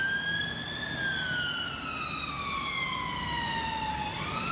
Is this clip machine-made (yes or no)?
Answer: no